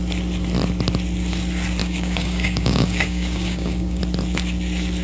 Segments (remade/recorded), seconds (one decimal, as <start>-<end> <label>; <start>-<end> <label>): 0.0-1.8 recorded; 1.8-4.0 remade; 4.0-5.0 recorded